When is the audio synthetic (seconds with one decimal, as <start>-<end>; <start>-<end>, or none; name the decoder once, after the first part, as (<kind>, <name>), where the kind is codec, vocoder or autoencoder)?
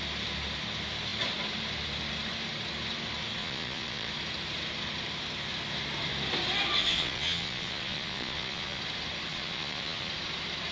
3.4-4.1 (vocoder, Vocos); 6.8-8.8; 9.3-10.1